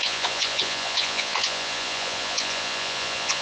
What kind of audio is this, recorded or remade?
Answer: remade